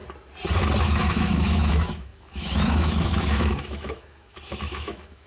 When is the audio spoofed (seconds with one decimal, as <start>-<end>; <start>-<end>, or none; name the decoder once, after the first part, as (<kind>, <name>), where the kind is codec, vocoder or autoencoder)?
0.8-5.3 (autoencoder, DAC-VAE)